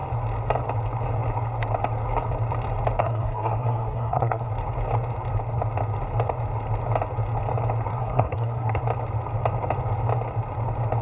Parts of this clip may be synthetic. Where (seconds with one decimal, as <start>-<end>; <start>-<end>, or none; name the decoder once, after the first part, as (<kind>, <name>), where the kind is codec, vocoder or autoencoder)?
3.0-4.5 (codec, SNAC); 7.9-8.8